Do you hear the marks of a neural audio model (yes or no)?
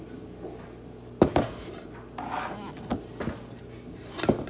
no